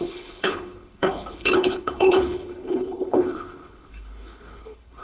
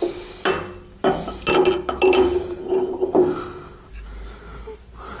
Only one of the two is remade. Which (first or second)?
first